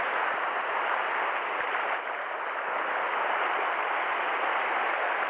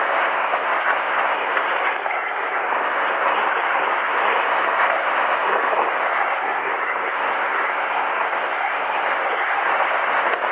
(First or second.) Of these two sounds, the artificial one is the second